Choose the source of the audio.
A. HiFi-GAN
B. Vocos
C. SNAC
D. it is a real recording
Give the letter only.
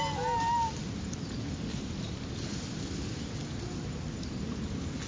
D